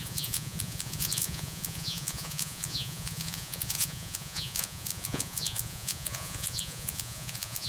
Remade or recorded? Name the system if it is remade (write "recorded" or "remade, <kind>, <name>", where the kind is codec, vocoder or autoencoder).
remade, vocoder, Vocos